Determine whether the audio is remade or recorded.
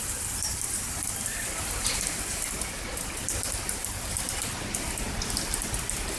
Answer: recorded